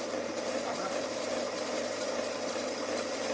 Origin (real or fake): fake